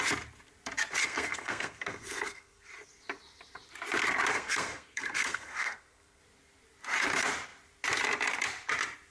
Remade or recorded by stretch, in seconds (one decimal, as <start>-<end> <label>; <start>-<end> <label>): 0.0-1.0 recorded; 1.0-2.7 remade; 2.7-4.3 recorded; 4.3-6.2 remade; 6.2-9.1 recorded